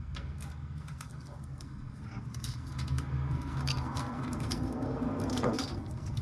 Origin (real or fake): fake